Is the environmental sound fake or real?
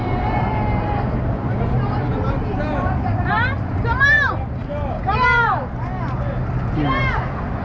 real